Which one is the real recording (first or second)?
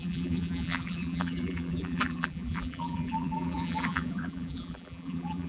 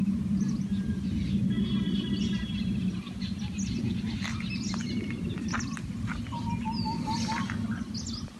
second